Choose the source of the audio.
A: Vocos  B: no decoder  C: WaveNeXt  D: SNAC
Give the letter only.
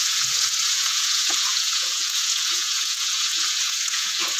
A